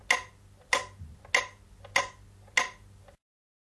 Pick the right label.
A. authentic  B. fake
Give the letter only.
A